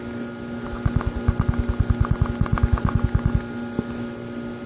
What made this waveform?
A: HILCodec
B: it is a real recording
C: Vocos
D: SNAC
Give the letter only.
B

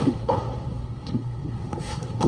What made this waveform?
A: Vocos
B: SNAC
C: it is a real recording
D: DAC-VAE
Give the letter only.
B